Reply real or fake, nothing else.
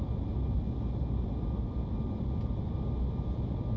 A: real